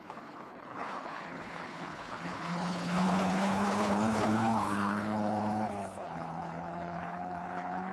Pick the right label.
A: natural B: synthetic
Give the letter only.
B